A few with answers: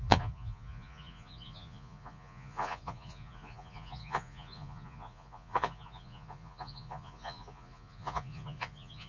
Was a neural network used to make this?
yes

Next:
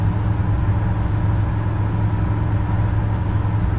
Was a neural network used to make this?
no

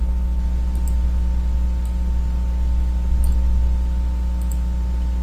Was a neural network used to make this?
no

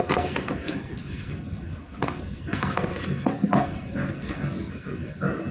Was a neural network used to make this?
yes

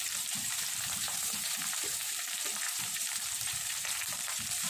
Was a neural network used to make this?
yes